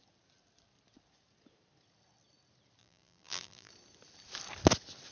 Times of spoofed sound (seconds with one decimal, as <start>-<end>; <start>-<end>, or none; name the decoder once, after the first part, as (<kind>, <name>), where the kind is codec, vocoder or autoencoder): 2.8-3.7 (vocoder, BigVGAN v2)